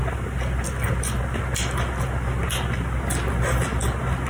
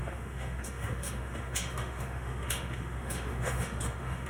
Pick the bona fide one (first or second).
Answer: first